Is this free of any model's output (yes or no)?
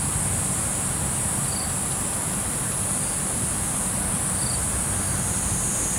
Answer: yes